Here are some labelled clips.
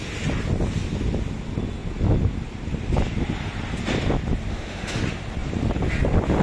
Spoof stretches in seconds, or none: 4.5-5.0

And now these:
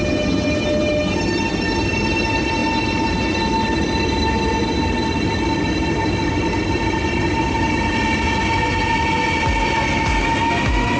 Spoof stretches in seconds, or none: none